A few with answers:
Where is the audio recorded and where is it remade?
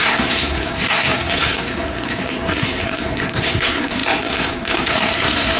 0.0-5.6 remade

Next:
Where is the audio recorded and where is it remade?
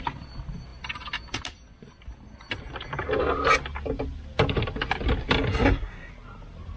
0.0-5.5 recorded; 5.5-6.1 remade; 6.1-6.8 recorded